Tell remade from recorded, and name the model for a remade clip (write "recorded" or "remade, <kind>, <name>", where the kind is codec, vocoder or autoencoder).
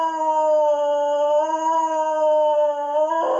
recorded